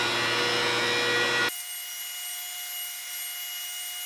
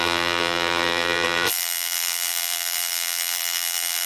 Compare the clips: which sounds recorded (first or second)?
first